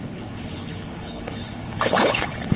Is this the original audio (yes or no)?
no